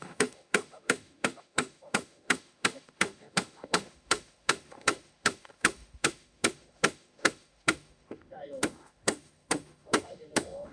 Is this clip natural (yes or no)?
no